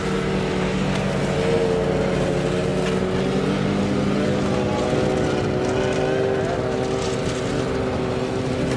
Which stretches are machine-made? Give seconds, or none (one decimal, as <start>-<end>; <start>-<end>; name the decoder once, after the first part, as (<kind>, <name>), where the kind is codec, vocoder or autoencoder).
none